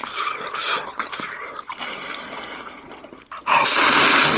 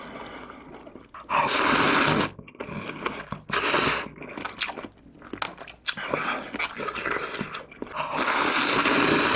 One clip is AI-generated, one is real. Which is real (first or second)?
second